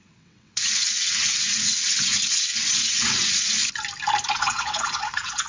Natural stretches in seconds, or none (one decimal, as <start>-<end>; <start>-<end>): 3.6-4.3